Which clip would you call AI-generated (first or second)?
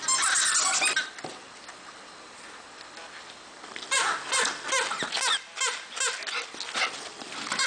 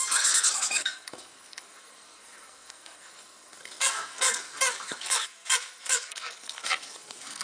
second